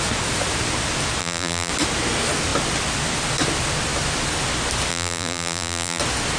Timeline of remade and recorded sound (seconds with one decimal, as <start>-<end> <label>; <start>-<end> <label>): 0.0-1.2 recorded; 1.2-1.7 remade; 1.7-4.9 recorded; 4.9-6.0 remade; 6.0-6.4 recorded